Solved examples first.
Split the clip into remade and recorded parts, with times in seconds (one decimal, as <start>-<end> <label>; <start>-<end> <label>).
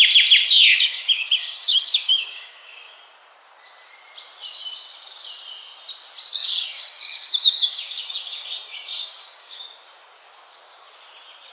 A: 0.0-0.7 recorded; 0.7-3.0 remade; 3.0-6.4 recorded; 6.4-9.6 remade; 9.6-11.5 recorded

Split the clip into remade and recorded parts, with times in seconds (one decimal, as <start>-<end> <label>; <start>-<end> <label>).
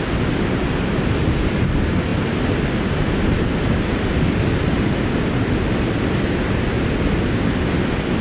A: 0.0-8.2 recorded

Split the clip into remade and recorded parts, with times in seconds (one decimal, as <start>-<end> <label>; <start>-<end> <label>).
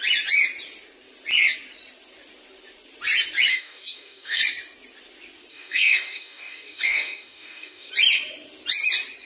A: 0.0-3.5 recorded; 3.5-4.4 remade; 4.4-5.5 recorded; 5.5-7.9 remade; 7.9-9.3 recorded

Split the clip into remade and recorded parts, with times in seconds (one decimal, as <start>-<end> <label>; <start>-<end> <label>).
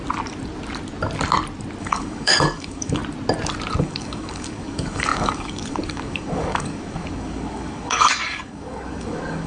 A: 0.0-1.8 recorded; 1.8-3.0 remade; 3.0-3.8 recorded; 3.8-9.5 remade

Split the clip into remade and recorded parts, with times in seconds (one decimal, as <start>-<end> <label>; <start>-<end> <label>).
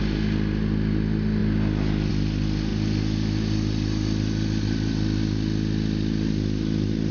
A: 0.0-7.1 recorded